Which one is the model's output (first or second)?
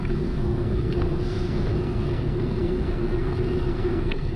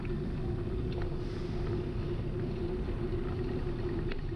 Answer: first